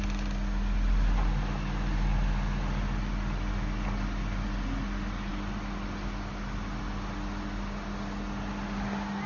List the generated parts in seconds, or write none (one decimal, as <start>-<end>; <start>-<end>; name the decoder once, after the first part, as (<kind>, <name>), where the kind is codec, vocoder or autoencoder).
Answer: none